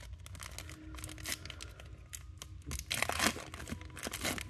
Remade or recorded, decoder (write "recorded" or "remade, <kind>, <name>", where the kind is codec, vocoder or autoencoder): recorded